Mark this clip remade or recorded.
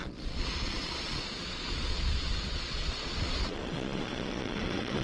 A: remade